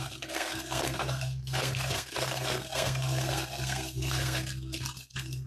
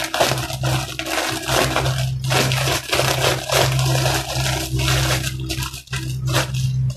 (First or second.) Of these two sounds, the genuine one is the second